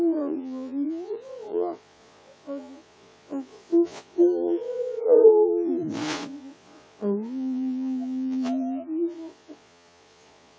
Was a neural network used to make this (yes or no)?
yes